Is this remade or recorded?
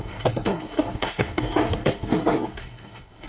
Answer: remade